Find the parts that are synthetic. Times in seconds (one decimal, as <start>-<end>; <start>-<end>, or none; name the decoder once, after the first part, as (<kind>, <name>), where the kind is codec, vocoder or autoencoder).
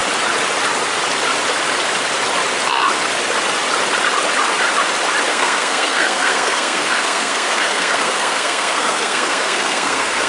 5.3-10.3 (codec, SNAC)